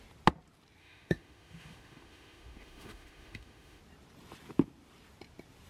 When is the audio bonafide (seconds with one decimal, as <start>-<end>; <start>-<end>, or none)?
0.0-0.8; 3.8-5.7